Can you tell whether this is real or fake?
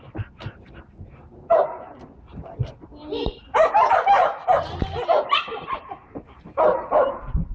fake